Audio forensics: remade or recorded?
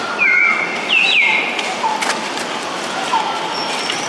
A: recorded